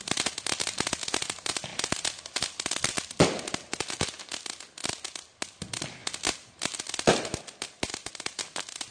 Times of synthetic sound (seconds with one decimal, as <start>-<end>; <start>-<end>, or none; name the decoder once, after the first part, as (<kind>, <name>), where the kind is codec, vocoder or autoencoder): none